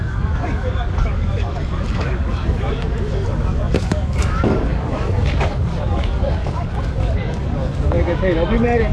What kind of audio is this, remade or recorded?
remade